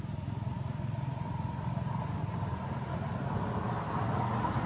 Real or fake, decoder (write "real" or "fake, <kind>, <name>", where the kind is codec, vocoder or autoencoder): fake, vocoder, BigVGAN v2